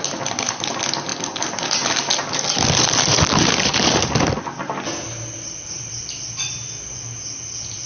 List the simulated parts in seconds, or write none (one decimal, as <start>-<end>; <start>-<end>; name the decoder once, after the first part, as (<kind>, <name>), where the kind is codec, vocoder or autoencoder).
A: none